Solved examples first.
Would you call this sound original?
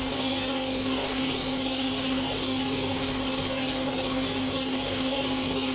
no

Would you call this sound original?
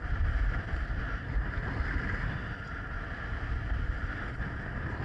yes